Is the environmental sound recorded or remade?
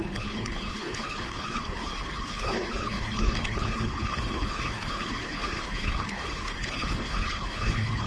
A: remade